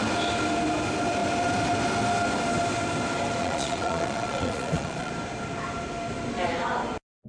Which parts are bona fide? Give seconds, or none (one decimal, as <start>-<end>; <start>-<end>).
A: 0.0-3.4; 5.1-7.3